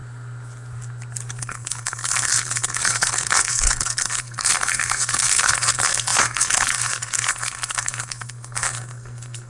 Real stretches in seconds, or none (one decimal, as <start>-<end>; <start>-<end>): 0.0-1.4